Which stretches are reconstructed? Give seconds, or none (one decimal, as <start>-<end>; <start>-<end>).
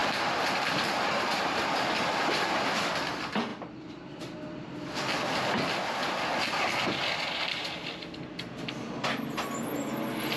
0.0-1.6